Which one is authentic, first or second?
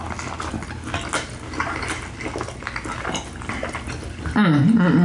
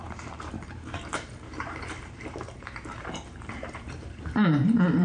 first